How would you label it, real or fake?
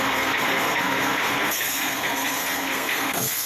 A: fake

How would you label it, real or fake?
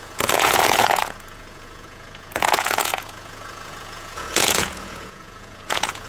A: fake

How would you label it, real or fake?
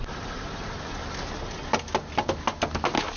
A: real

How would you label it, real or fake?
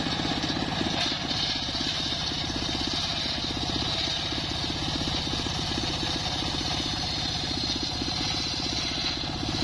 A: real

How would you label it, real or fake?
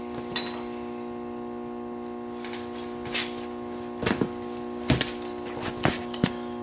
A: real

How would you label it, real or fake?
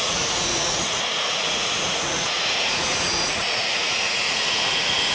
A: fake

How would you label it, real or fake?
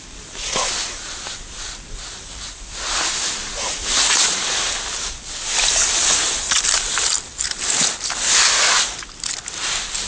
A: real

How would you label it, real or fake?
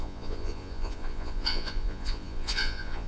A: fake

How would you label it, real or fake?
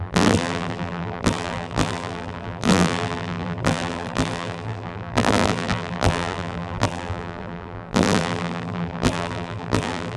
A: fake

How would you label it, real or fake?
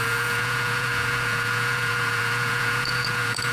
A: fake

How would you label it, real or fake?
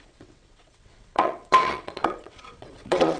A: fake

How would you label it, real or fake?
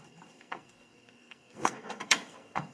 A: fake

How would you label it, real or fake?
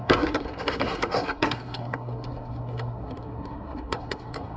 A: fake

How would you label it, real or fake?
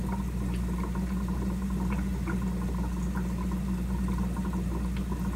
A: real